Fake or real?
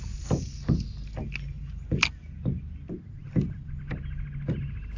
real